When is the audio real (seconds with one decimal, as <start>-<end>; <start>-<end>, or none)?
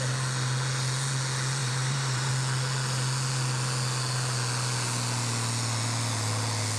0.0-1.6; 2.3-6.8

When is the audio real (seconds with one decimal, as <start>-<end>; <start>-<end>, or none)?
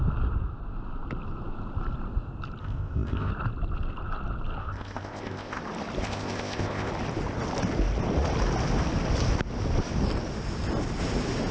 0.0-2.6; 3.3-4.6; 5.6-6.0; 6.9-11.5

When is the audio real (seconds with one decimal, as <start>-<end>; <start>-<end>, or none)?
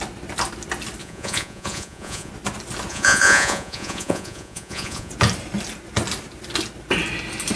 0.0-1.0; 2.3-2.9; 5.1-7.6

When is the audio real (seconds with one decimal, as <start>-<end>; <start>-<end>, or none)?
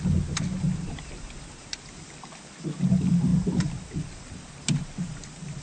0.0-5.6